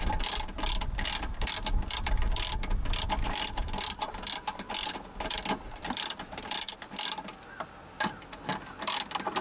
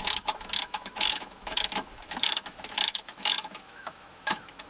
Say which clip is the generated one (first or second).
second